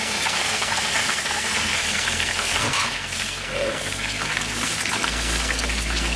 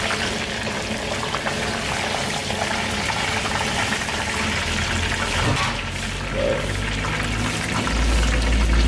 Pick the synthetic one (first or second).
first